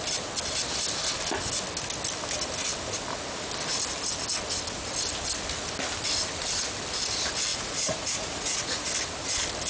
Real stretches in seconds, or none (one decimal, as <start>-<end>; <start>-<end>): 0.0-7.5; 8.9-9.7